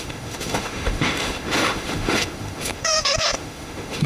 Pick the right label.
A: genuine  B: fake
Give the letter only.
B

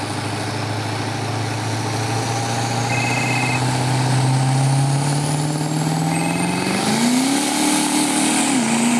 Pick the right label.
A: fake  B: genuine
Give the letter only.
B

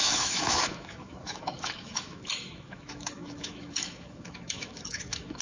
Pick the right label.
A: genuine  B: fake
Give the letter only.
B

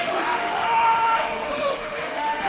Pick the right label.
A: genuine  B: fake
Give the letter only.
B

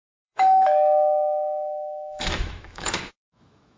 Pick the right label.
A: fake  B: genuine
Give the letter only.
A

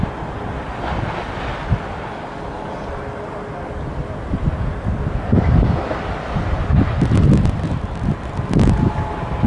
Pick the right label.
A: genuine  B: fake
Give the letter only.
A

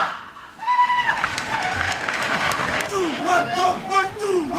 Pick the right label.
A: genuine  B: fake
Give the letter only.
B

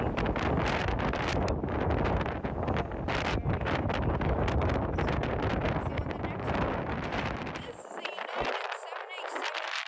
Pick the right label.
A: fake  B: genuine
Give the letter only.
B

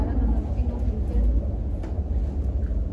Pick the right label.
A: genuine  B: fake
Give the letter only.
A